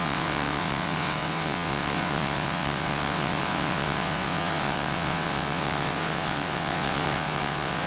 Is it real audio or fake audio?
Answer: fake